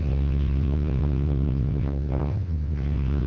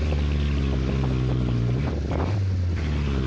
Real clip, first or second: second